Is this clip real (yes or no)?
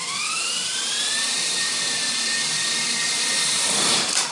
no